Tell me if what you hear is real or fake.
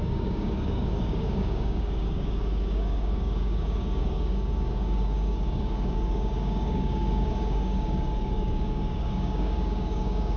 fake